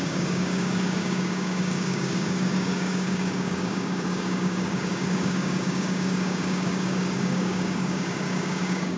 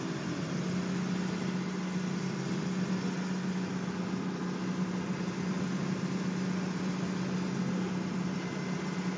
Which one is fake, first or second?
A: first